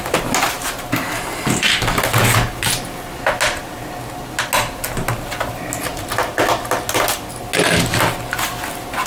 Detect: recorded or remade recorded